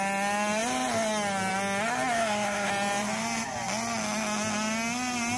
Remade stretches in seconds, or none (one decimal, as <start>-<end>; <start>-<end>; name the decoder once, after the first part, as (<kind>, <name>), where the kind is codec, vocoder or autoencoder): 2.2-2.7 (codec, SNAC)